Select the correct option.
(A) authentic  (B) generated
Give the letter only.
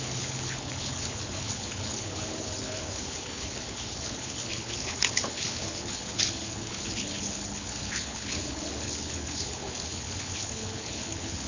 B